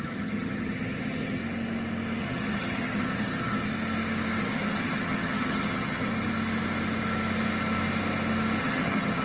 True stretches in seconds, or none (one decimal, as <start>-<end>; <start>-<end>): 1.4-2.2; 3.7-4.4; 6.1-8.6